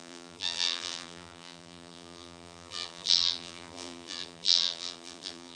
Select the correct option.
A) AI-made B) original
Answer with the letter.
A